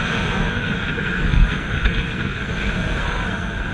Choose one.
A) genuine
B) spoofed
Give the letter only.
B